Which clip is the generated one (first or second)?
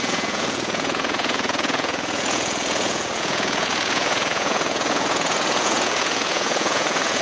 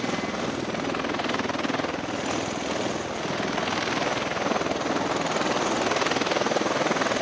first